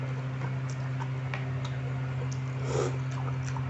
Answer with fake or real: real